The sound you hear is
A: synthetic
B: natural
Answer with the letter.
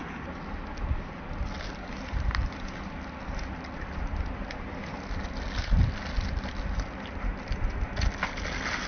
B